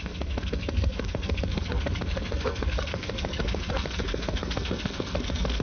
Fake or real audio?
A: fake